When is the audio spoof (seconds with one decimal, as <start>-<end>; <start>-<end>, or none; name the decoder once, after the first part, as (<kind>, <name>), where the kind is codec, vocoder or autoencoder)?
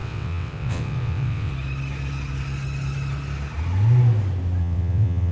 0.0-1.5 (vocoder, WaveNeXt); 4.6-5.3